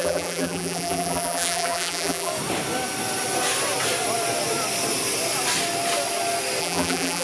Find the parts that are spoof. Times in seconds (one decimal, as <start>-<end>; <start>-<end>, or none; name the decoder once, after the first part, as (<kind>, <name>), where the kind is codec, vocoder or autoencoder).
0.0-2.3 (vocoder, BigVGAN v2); 6.6-7.2